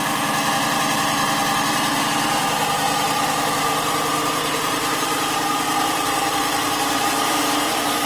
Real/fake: fake